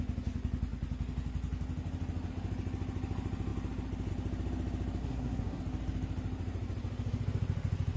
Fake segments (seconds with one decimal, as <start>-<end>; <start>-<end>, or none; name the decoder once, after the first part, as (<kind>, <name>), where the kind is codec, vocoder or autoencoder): 5.0-5.6 (codec, SNAC)